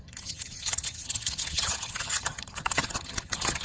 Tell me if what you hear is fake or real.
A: fake